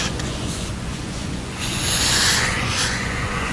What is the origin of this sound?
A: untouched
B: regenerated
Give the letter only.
B